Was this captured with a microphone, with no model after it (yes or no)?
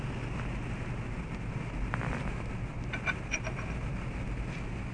yes